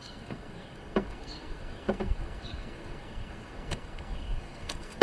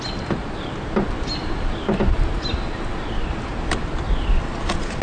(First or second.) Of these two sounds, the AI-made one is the first